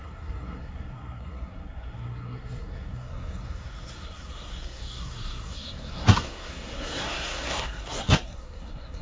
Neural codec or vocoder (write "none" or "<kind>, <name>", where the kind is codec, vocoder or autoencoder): codec, SNAC